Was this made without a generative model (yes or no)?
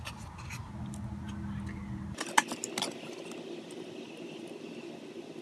yes